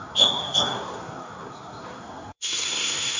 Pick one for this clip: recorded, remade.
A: remade